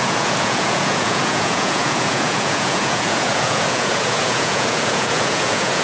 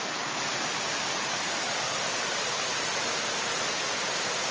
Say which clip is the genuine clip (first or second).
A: second